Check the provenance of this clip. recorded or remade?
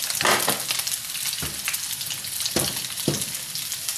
recorded